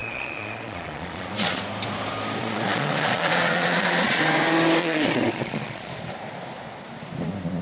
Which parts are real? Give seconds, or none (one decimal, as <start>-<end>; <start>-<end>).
1.6-2.4; 4.2-4.8; 5.9-7.6